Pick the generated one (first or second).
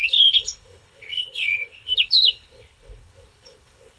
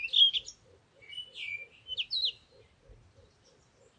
first